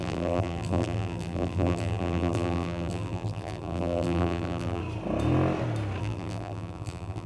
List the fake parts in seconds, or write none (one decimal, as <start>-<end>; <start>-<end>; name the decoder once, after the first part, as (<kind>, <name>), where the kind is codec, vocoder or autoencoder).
0.0-4.8 (vocoder, BigVGAN v2); 6.0-7.3